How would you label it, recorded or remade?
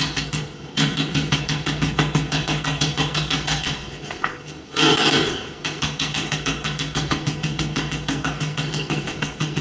remade